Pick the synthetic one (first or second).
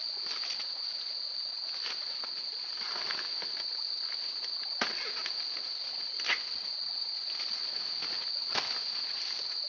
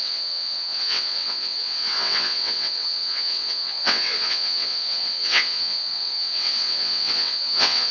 second